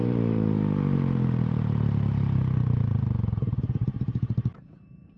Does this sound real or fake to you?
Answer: fake